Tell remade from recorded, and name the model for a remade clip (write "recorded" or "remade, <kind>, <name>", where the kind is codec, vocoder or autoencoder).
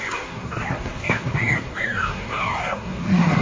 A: remade, codec, SNAC